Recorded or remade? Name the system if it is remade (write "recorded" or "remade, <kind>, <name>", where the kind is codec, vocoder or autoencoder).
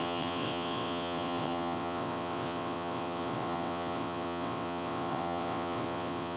remade, vocoder, WaveNeXt